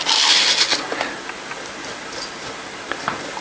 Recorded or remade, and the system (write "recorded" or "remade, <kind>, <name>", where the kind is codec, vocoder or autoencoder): recorded